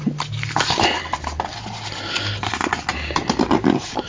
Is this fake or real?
real